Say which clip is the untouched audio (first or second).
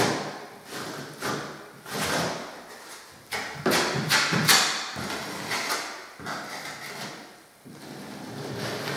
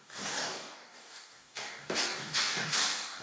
first